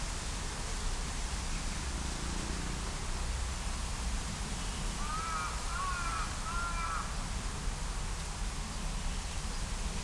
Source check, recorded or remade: recorded